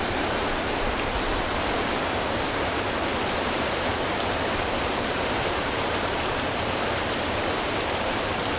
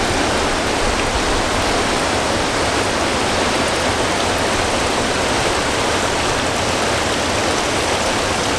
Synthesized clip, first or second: first